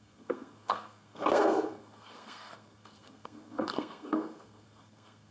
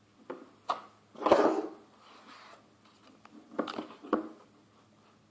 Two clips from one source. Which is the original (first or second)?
second